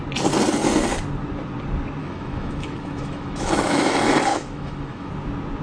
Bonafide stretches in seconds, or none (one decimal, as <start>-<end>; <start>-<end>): 0.0-2.0; 3.9-4.3; 5.1-5.6